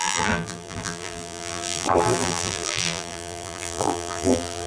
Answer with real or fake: fake